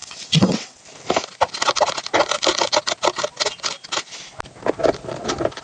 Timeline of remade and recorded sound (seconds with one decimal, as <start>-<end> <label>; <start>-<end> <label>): 0.0-0.8 remade; 0.8-5.6 recorded